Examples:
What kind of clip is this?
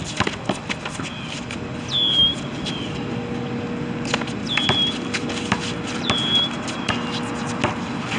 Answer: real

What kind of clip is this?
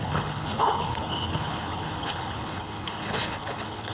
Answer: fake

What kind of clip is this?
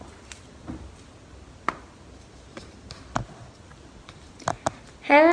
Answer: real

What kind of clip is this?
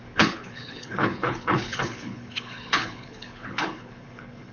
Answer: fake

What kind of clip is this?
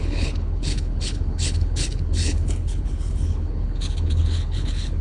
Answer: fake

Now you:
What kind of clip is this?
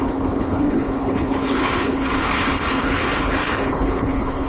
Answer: fake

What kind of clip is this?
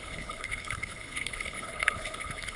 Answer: fake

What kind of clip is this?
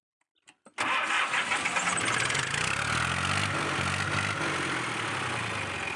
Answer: real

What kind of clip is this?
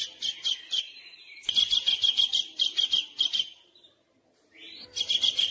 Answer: real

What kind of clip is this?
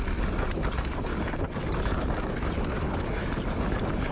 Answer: real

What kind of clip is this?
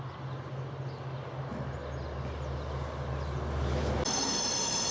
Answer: real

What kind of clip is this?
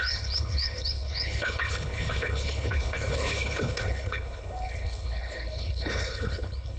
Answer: fake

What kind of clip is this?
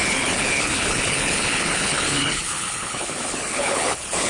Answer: fake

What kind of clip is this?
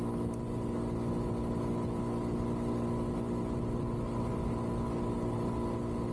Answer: real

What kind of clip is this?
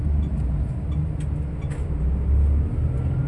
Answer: real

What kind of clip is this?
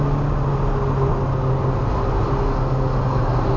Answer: real